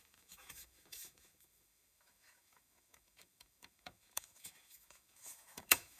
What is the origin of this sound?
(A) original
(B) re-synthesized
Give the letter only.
B